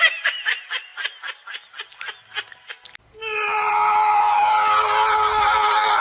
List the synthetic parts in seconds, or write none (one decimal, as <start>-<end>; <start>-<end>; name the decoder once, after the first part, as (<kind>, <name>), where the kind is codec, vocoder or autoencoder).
none